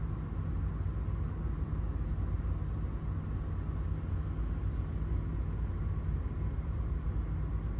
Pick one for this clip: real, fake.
real